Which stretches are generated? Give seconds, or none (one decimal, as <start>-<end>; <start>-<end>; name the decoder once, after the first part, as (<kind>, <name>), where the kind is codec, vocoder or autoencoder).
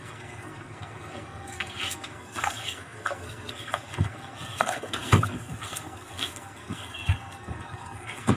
0.0-8.4 (codec, SNAC)